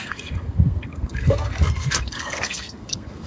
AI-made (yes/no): yes